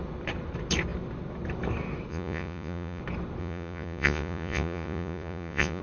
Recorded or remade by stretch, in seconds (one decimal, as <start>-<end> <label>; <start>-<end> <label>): 0.0-2.1 recorded; 2.1-3.0 remade; 3.0-3.4 recorded; 3.4-5.8 remade